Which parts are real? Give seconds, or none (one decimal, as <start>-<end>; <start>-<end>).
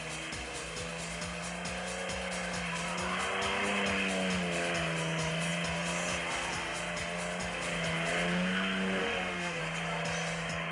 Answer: 0.0-9.0; 9.6-10.7